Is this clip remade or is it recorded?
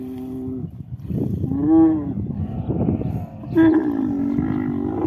recorded